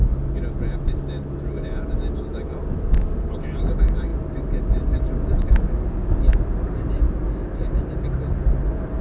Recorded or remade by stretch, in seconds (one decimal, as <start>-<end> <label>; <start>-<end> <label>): 0.0-9.0 recorded